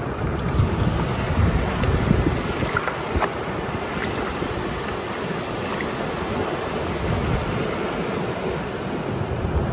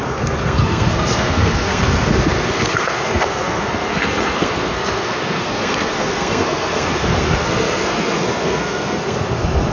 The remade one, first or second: second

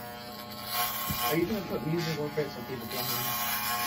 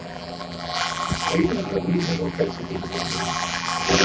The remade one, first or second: second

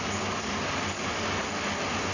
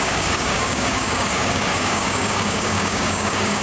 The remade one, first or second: second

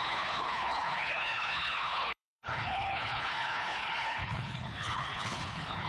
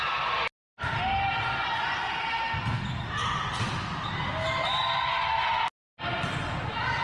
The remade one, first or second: first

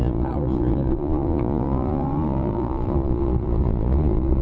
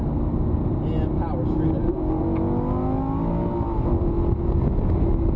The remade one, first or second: first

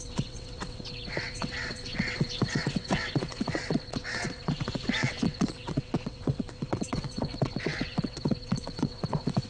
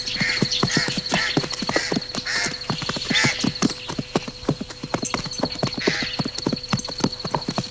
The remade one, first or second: first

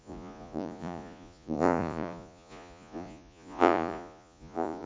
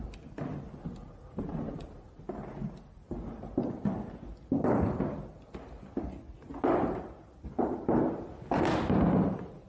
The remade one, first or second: first